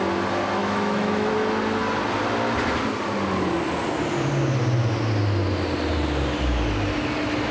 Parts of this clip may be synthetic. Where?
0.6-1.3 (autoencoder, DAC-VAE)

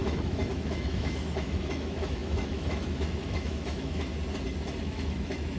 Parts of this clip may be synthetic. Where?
0.0-4.1 (autoencoder, DAC-VAE); 4.8-5.6

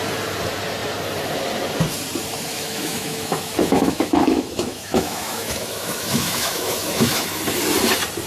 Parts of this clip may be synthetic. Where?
2.5-7.4 (autoencoder, DAC-VAE)

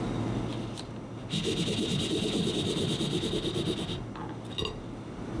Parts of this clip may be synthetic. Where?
none

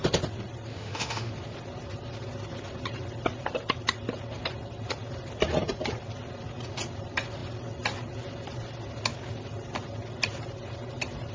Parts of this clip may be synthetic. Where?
0.7-1.3 (autoencoder, DAC-VAE)

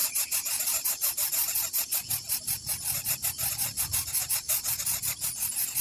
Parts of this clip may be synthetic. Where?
none